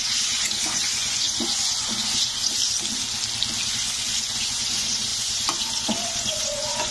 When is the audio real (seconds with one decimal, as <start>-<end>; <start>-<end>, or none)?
2.6-3.7

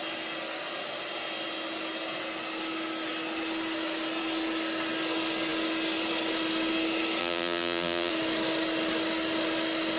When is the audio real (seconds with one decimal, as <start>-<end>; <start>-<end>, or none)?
0.0-7.2; 8.1-10.0

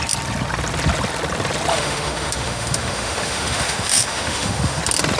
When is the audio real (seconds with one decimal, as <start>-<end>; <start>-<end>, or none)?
0.0-1.7; 4.8-5.2